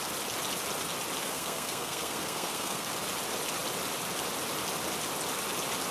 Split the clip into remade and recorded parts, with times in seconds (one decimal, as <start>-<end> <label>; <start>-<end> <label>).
0.0-1.2 recorded; 1.2-2.9 remade; 2.9-5.9 recorded